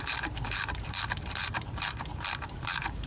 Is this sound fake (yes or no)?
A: yes